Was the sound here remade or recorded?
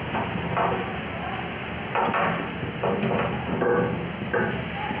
recorded